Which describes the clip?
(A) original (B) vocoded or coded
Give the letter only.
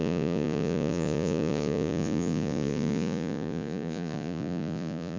B